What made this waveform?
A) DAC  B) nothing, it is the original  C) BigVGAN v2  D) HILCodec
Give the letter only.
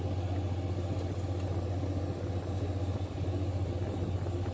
B